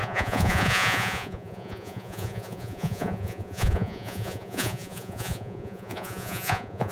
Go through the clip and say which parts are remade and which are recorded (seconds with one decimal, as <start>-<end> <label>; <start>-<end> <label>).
0.0-6.9 remade